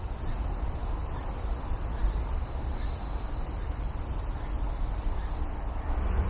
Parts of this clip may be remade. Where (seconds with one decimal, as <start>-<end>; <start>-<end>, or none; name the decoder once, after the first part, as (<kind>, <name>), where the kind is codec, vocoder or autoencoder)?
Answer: none